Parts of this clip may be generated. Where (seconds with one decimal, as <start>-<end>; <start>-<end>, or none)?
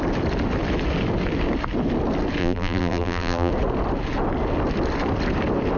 2.4-3.5